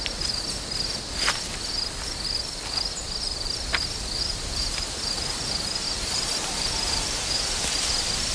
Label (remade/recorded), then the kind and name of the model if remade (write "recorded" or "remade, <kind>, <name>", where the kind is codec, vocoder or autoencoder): remade, vocoder, BigVGAN v2